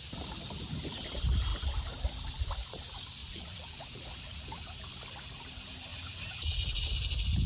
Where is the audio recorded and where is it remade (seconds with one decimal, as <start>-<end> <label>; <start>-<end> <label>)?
0.0-3.2 recorded; 3.2-4.8 remade; 4.8-5.9 recorded; 5.9-6.8 remade; 6.8-7.5 recorded